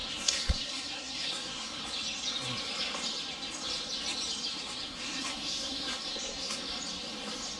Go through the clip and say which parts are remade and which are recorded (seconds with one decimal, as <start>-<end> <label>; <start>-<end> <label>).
0.0-1.8 remade; 1.8-4.5 recorded; 4.5-6.6 remade; 6.6-7.6 recorded